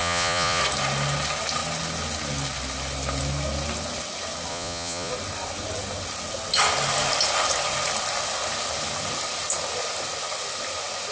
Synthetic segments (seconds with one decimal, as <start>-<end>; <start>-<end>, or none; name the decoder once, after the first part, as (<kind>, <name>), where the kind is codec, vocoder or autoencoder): 0.0-0.6 (vocoder, Vocos); 4.5-5.1